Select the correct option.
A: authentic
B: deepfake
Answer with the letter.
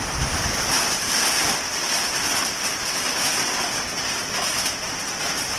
A